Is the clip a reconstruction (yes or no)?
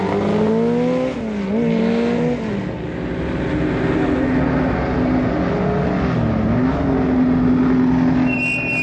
no